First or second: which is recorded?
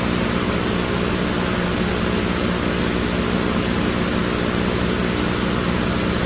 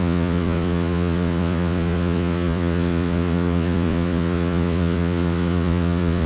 first